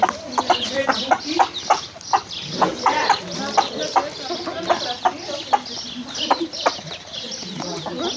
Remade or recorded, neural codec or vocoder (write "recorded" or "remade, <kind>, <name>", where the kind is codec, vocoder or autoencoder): recorded